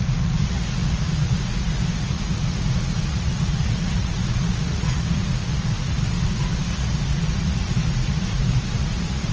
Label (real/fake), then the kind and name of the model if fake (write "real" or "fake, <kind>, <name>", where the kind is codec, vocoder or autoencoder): fake, vocoder, Vocos